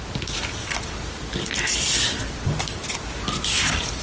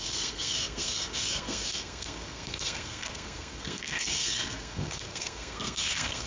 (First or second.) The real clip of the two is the first